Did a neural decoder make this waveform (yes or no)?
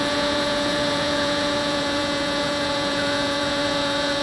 yes